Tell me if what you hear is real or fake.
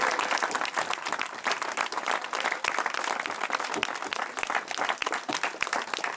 real